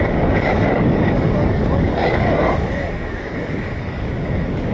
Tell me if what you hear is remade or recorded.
remade